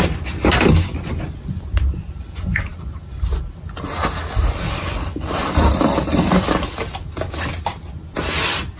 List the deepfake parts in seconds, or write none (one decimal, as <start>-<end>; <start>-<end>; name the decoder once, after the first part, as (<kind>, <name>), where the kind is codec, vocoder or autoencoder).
4.2-6.7 (vocoder, BigVGAN v2)